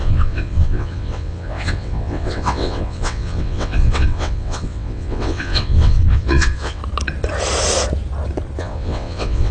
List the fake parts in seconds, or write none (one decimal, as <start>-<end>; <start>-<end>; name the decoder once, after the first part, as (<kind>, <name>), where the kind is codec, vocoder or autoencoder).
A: 0.0-6.8 (vocoder, WaveNeXt); 8.6-9.5